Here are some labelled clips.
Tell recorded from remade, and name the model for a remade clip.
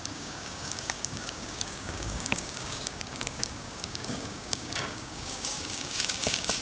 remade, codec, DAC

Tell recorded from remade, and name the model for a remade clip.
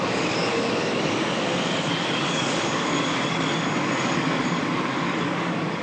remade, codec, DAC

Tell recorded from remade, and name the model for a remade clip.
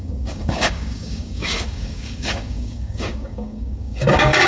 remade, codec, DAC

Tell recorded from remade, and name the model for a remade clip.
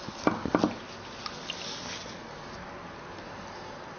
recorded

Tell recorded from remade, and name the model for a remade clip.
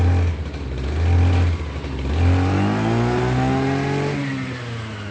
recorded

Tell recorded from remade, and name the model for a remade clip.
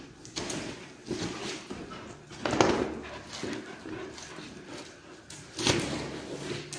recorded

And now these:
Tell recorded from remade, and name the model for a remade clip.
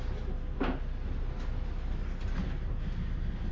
recorded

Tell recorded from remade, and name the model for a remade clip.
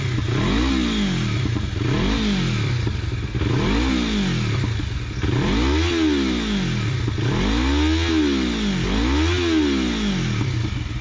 recorded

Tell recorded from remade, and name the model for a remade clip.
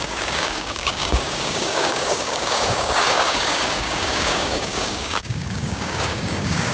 remade, codec, DAC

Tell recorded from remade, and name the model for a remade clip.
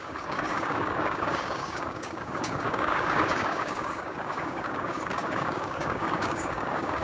remade, codec, DAC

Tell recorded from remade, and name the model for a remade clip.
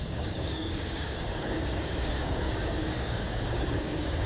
remade, codec, DAC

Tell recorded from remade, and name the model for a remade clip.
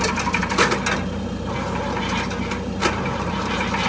recorded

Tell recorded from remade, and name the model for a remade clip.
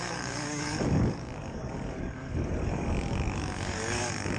remade, codec, DAC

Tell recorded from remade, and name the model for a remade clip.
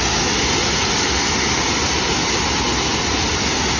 recorded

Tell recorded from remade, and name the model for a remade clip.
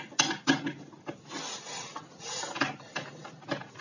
recorded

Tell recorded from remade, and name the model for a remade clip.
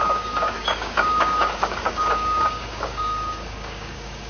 remade, codec, DAC